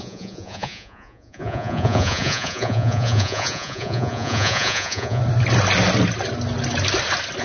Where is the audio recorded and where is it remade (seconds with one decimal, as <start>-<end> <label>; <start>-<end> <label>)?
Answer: 0.0-5.2 remade; 5.2-7.4 recorded